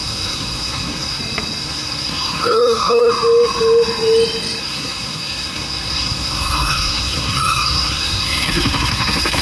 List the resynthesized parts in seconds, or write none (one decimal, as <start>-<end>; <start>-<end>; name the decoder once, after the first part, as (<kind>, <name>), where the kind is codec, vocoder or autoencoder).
0.0-1.2 (codec, SNAC); 1.6-3.1; 4.6-9.4